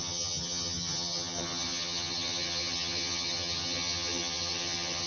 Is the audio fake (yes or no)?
yes